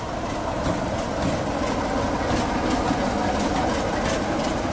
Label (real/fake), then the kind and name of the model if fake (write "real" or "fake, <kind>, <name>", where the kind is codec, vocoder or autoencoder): real